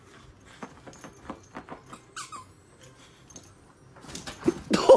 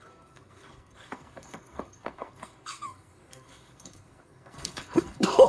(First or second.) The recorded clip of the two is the first